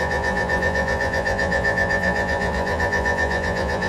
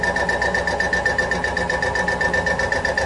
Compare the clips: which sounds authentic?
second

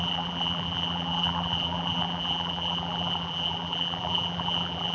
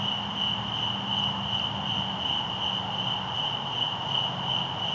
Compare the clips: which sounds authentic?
second